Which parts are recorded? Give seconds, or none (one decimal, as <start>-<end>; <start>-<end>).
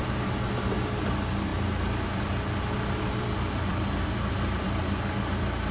0.0-3.7; 4.8-5.7